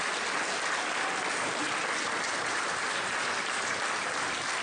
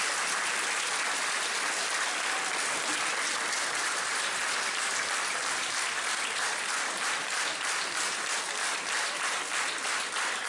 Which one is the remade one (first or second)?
second